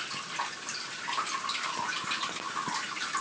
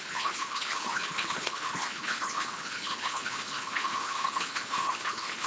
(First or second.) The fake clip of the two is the second